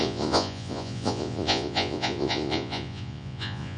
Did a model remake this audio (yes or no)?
yes